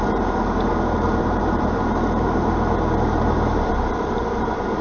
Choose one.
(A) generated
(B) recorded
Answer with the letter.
A